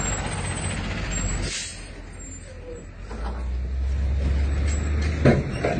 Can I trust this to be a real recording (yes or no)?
yes